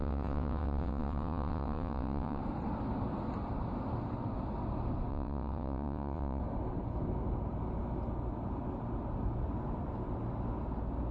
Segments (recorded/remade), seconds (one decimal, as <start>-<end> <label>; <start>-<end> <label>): 0.0-2.4 remade; 2.4-5.1 recorded; 5.1-6.4 remade; 6.4-11.1 recorded